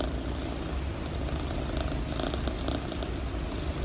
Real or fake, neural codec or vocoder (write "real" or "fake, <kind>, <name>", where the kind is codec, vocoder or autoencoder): real